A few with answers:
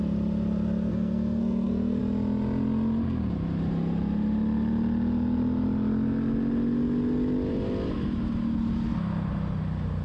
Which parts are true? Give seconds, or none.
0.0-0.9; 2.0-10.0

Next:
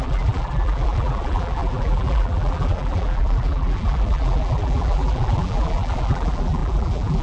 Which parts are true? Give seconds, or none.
none